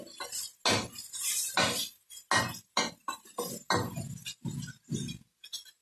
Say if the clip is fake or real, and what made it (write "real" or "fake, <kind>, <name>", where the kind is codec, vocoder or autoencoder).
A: real